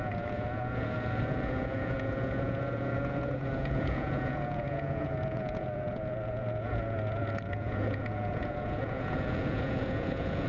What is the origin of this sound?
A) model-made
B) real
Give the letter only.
A